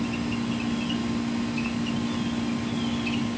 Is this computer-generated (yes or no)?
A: no